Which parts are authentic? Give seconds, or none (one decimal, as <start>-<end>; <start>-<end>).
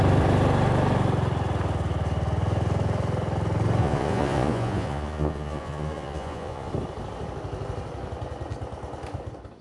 0.0-3.8; 6.7-9.6